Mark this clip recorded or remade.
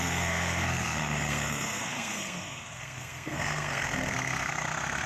remade